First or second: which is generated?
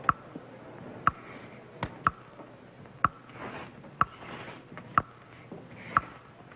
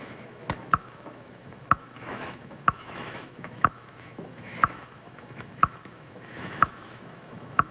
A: second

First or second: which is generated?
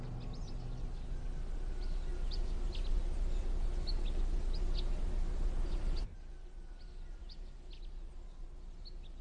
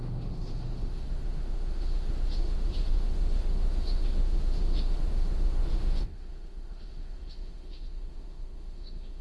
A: second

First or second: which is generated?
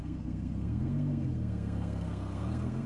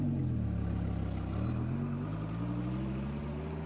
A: first